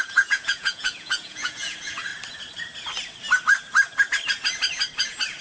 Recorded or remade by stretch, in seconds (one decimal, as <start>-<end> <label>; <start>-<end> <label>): 0.0-2.1 remade; 2.1-5.4 recorded